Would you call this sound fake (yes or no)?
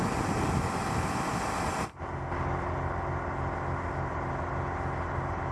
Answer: no